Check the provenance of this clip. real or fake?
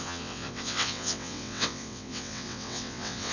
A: fake